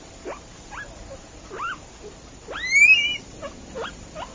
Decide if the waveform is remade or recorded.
recorded